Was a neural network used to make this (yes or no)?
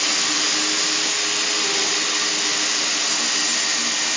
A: no